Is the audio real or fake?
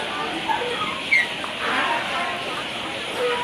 real